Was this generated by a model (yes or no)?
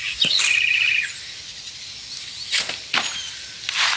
no